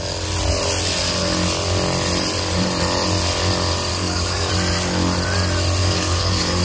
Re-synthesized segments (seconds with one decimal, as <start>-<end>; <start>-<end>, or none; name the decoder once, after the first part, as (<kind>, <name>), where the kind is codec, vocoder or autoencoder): 3.9-4.5 (codec, DAC); 5.8-6.6